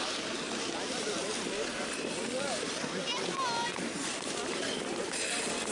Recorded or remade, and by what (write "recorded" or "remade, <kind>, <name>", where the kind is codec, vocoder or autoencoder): recorded